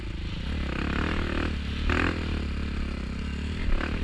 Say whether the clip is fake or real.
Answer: real